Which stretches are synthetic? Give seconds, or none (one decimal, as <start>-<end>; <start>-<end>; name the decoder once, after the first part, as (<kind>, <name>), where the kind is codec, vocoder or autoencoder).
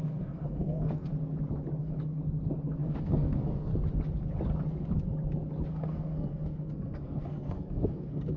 0.0-1.1 (codec, SNAC); 1.8-2.2; 2.7-3.7; 5.7-8.4